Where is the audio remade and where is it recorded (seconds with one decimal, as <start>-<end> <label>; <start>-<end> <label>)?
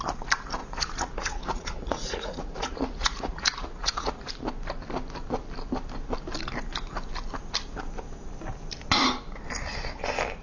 0.0-0.6 recorded; 0.6-4.3 remade; 4.3-10.4 recorded